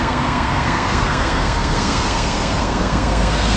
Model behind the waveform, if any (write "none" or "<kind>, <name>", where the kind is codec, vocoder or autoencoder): codec, SNAC